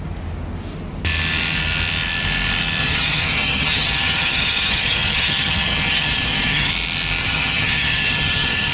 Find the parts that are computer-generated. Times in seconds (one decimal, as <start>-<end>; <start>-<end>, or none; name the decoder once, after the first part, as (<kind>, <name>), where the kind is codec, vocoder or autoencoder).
2.8-6.7 (vocoder, HiFi-GAN); 7.2-8.7